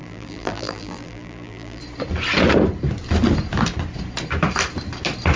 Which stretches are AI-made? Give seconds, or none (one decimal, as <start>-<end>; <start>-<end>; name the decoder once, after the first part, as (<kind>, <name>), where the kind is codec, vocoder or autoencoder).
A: 0.0-1.8 (vocoder, BigVGAN v2)